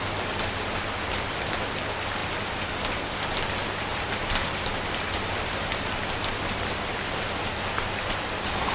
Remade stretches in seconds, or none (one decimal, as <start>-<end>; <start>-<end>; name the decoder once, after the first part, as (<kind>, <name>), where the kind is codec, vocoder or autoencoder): 3.9-5.7 (vocoder, BigVGAN v2)